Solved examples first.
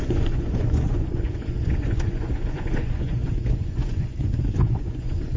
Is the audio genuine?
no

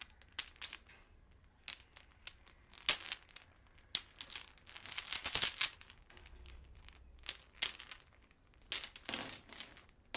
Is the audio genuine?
yes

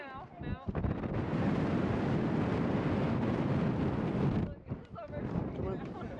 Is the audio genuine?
yes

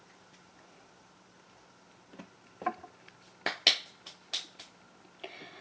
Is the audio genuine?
yes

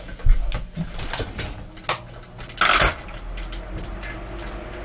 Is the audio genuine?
yes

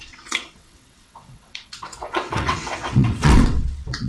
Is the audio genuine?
no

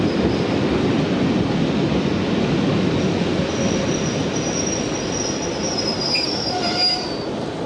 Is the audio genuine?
yes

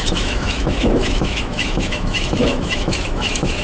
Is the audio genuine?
no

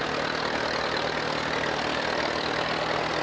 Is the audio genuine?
yes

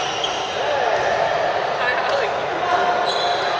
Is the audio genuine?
yes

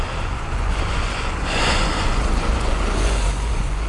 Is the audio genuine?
no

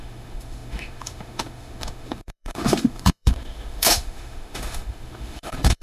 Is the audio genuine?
no